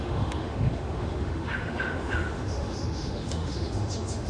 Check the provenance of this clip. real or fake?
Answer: fake